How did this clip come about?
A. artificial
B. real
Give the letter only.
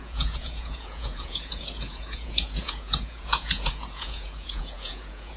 A